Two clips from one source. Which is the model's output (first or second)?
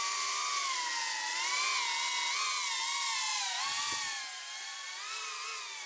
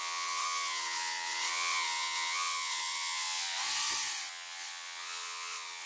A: second